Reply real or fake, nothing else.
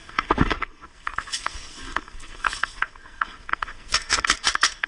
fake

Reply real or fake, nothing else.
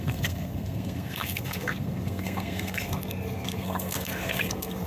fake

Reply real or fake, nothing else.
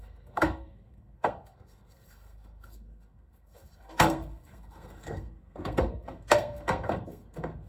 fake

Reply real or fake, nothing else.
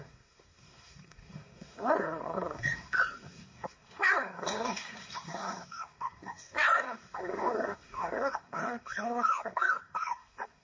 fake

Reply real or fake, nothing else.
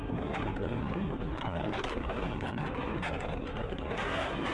fake